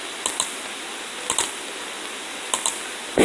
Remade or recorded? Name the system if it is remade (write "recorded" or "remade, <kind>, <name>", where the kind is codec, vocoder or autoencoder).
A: recorded